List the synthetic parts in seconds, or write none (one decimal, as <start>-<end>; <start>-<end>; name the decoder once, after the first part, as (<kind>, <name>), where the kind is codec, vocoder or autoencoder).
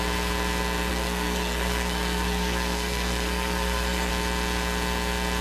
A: 0.9-4.1 (codec, SNAC)